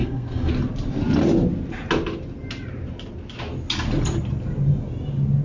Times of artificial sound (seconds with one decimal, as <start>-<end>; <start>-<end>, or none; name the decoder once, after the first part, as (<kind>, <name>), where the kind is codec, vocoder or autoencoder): 0.0-0.5 (codec, SNAC)

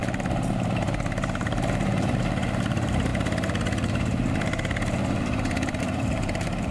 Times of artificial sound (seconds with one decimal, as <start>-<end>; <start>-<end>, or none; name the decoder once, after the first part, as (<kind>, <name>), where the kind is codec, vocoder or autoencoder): 0.0-6.7 (vocoder, BigVGAN v2)